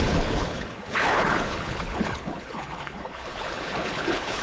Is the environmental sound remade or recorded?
remade